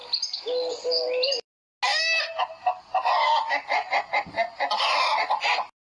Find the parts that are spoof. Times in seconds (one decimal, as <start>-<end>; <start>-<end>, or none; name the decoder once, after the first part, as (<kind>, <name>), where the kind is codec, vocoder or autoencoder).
none